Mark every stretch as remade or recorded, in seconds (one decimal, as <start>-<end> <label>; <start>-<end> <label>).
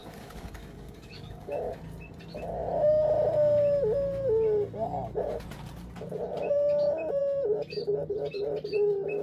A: 0.0-1.8 remade; 1.8-9.2 recorded